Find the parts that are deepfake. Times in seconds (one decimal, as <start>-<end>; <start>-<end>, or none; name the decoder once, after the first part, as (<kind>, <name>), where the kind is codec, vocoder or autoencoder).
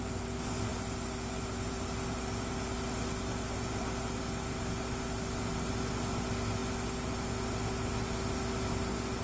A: none